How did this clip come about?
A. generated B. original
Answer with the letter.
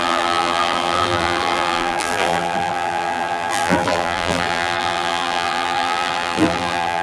A